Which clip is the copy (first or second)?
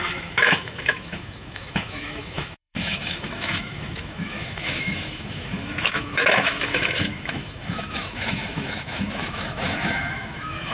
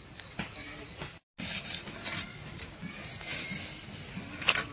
first